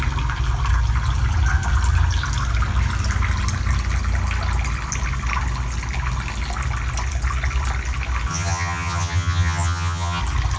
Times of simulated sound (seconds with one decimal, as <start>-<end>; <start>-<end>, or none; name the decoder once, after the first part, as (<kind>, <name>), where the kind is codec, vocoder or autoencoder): 8.3-10.2 (vocoder, HiFi-GAN)